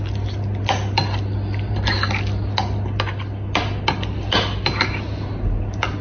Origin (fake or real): real